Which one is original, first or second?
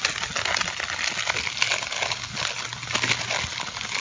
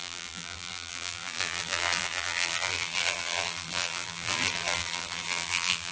first